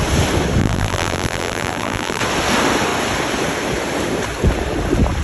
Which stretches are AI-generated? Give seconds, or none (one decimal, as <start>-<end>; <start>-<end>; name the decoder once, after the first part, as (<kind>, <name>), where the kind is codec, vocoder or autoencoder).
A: 0.6-2.2 (vocoder, BigVGAN v2)